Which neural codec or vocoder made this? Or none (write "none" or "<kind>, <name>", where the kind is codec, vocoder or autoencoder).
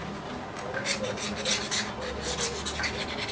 none